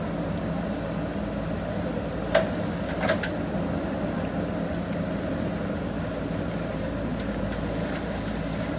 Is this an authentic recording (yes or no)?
yes